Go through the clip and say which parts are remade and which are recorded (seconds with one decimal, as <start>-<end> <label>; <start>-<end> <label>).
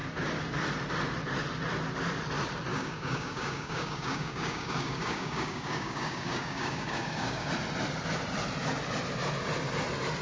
0.0-2.7 recorded; 2.7-7.5 remade; 7.5-10.2 recorded